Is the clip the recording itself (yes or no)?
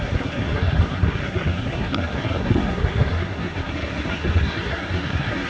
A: no